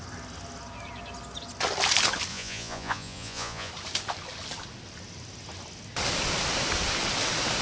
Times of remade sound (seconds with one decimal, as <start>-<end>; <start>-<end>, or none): 2.3-3.7